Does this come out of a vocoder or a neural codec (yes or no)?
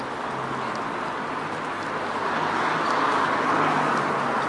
no